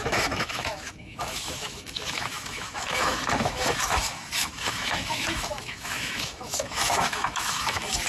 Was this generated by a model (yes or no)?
yes